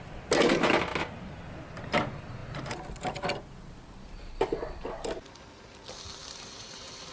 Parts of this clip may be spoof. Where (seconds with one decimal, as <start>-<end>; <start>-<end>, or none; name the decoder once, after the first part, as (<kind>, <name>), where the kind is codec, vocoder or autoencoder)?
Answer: none